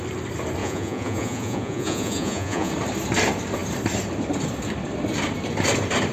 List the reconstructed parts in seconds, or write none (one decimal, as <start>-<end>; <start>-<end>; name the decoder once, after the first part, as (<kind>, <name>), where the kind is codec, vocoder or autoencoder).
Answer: 0.6-2.7 (vocoder, Vocos)